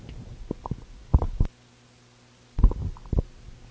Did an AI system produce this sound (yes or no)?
no